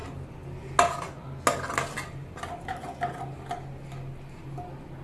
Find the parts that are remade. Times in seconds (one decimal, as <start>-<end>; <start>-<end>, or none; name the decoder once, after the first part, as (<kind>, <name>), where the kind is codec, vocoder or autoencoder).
none